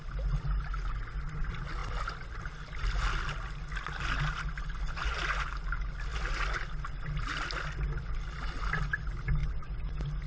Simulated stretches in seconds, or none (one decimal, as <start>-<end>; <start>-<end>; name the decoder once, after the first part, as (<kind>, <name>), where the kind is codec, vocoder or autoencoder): none